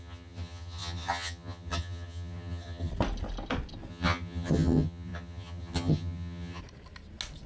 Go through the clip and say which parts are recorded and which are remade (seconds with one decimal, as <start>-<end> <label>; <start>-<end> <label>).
0.0-2.9 remade; 2.9-3.9 recorded; 3.9-6.6 remade; 6.6-7.5 recorded

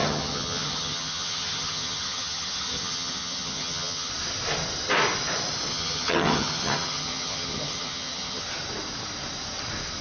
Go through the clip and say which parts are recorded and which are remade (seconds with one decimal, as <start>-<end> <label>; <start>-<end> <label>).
0.0-4.1 remade; 4.1-5.7 recorded; 5.7-8.4 remade; 8.4-10.0 recorded